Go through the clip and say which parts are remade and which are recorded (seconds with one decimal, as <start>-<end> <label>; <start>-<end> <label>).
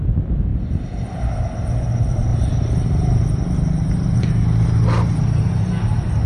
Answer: 0.0-2.3 recorded; 2.3-3.2 remade; 3.2-6.3 recorded